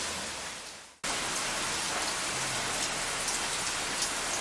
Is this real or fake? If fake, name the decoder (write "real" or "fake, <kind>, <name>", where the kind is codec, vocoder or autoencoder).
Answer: real